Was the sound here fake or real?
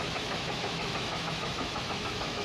fake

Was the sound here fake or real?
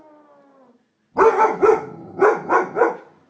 real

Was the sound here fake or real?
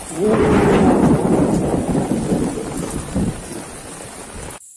real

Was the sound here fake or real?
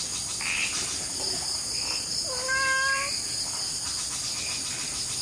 real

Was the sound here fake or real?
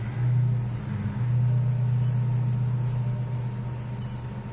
real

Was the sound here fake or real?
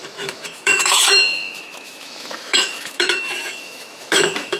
fake